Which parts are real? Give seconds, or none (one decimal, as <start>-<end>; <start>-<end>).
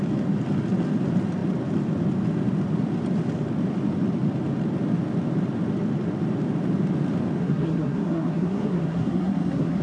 0.0-7.4